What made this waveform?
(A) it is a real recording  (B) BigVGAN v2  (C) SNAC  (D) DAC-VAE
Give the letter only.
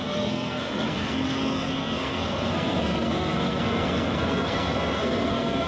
C